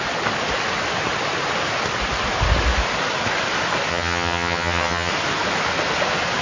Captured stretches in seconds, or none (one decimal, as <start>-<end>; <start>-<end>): 0.0-3.9; 5.1-6.4